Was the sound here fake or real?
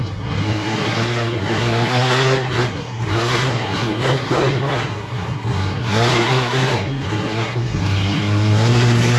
fake